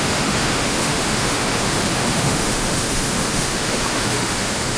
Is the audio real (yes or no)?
no